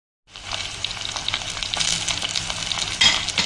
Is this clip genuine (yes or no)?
yes